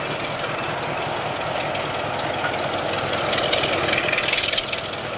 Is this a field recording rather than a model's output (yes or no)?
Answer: yes